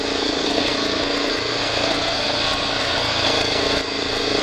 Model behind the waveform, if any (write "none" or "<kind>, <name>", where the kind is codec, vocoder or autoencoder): codec, SNAC